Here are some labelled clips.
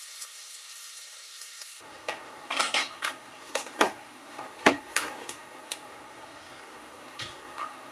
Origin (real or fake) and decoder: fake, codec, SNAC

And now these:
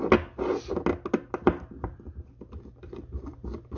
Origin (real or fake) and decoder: real